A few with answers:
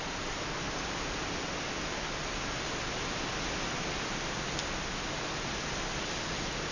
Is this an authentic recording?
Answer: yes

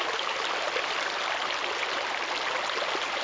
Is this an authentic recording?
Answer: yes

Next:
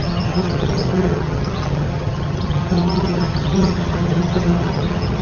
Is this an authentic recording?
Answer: no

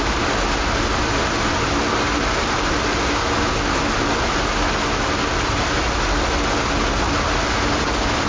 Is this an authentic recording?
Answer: yes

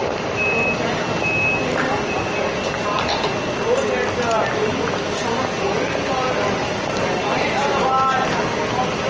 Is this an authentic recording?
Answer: yes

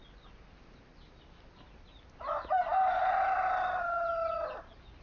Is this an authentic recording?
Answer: yes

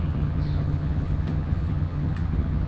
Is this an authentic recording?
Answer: no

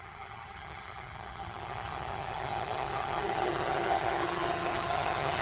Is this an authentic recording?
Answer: no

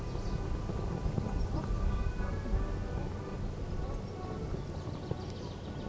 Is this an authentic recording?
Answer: yes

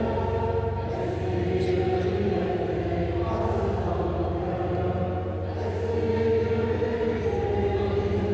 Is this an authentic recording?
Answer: yes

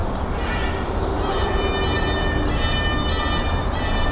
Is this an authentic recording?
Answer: yes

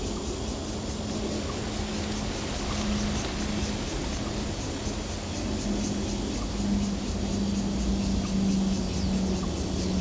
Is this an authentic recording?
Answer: yes